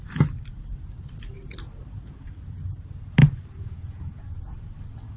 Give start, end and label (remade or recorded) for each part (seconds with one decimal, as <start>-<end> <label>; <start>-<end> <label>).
0.0-3.2 recorded; 3.2-4.2 remade; 4.2-5.2 recorded